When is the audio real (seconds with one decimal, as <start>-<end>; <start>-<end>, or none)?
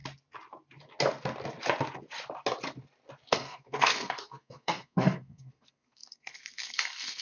0.0-3.3